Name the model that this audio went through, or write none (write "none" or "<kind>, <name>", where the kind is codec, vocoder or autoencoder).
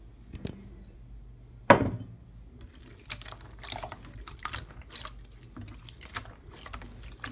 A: none